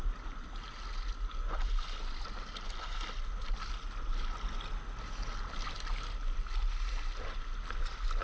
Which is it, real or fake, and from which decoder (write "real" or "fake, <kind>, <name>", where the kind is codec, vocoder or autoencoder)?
real